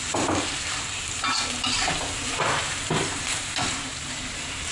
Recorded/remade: remade